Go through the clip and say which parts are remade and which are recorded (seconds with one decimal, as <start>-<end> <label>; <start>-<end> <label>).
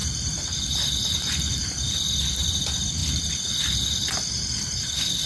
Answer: 0.0-5.3 remade